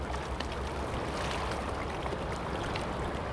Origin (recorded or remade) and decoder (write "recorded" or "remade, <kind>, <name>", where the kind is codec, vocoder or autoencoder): recorded